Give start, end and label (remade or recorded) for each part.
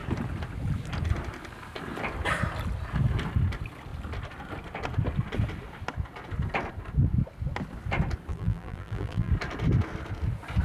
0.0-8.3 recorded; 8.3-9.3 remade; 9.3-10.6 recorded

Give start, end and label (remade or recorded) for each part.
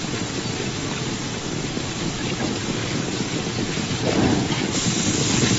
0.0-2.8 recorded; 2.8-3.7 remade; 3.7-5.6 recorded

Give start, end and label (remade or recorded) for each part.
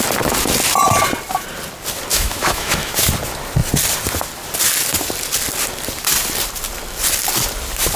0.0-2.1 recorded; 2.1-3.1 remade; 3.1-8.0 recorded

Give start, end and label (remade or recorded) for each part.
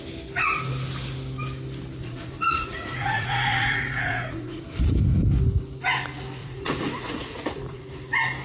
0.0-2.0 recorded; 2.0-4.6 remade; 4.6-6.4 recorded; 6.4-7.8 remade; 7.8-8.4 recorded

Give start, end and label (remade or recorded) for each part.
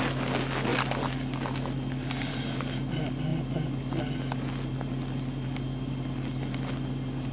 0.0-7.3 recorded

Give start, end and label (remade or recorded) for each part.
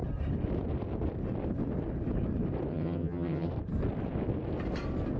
0.0-2.7 recorded; 2.7-3.5 remade; 3.5-5.2 recorded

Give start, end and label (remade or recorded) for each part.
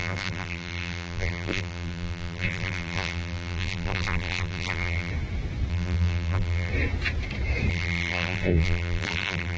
0.0-5.1 remade; 5.1-5.7 recorded; 5.7-6.7 remade; 6.7-7.7 recorded; 7.7-9.6 remade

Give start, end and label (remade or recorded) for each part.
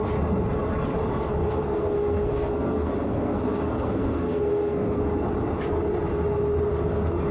0.0-1.4 recorded; 1.4-5.0 remade; 5.0-7.3 recorded